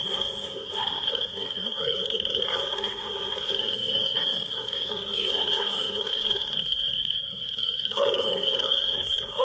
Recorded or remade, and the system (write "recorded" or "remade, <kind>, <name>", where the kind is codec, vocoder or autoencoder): remade, codec, SNAC